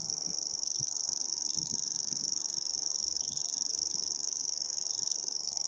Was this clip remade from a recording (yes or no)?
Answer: yes